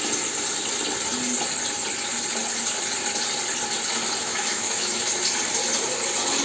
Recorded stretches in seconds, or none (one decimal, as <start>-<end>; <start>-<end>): 0.0-4.2; 5.1-6.4